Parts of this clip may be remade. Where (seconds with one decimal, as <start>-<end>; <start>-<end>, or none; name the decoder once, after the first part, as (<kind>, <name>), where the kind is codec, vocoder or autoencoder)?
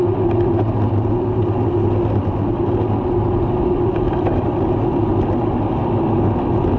none